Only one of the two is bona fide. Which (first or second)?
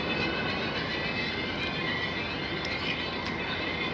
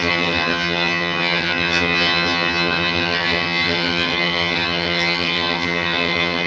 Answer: first